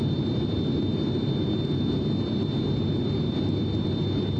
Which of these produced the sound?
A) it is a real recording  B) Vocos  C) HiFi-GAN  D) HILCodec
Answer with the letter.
A